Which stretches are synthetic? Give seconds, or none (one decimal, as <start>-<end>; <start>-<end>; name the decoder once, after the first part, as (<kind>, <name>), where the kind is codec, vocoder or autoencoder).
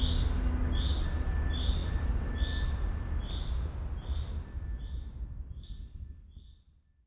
none